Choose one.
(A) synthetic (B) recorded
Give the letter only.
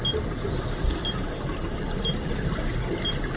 B